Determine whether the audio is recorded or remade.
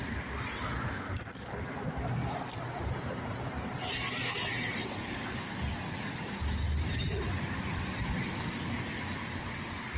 recorded